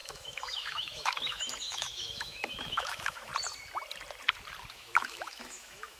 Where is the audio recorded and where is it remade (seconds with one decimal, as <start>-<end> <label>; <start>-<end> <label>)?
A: 0.0-3.3 remade; 3.3-4.7 recorded; 4.7-6.0 remade